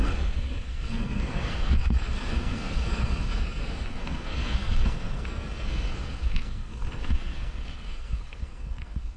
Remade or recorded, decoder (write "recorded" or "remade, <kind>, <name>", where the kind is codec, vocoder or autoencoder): remade, codec, SNAC